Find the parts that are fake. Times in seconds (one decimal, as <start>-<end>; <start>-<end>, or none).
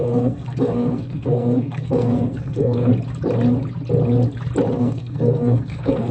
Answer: 0.0-2.9; 4.8-6.1